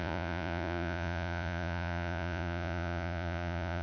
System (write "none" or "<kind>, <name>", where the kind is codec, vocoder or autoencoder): vocoder, Vocos